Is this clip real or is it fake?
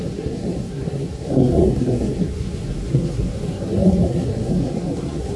fake